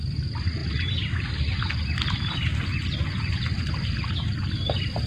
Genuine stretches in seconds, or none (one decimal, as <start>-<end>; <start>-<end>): 0.0-5.1

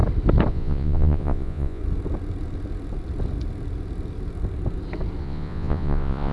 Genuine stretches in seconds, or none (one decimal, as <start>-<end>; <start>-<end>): 0.0-0.5; 1.8-5.2

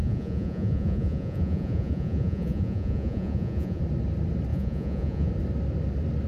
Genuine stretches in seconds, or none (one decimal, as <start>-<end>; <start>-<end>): 3.8-4.5; 5.3-6.3

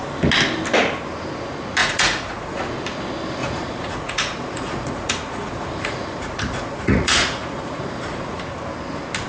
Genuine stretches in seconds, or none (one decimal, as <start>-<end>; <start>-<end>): 0.0-1.8; 2.6-3.4; 8.4-9.3

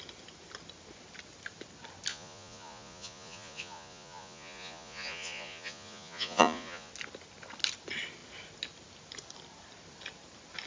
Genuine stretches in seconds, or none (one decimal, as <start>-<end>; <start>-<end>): 0.0-2.1; 6.9-10.7